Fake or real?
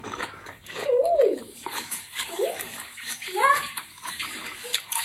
fake